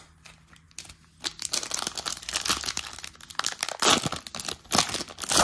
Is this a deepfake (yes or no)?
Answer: no